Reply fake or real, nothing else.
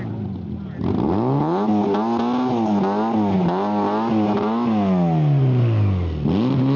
real